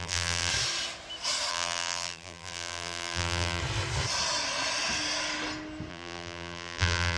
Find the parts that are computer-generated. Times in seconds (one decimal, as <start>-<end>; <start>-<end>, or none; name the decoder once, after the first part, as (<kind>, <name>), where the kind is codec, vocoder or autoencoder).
0.0-0.5 (vocoder, BigVGAN v2); 1.5-3.6; 5.9-7.2